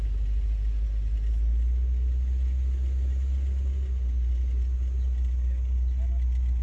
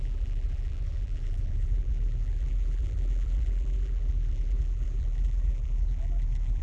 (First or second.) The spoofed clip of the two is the second